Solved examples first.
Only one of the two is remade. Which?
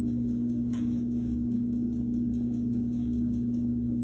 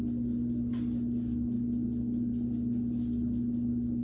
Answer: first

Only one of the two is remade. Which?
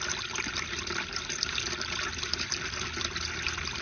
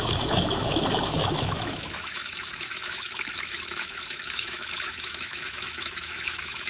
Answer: second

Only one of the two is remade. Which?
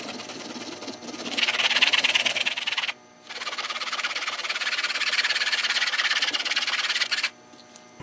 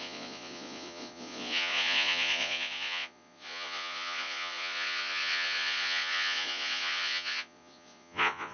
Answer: second